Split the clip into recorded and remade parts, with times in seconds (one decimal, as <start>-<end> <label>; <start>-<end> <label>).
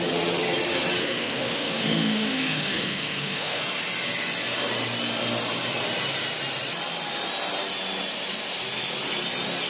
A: 0.0-1.0 recorded; 1.0-3.6 remade; 3.6-9.7 recorded